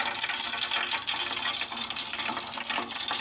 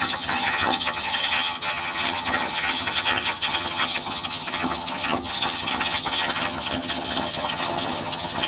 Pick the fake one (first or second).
second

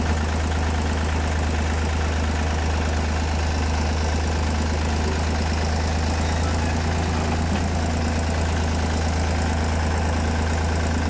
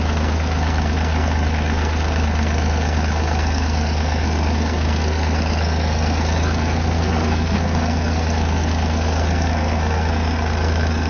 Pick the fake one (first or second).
second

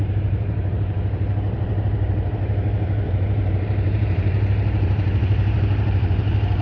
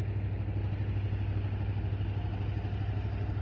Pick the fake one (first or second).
first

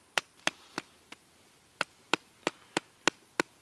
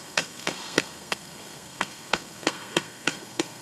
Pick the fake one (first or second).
second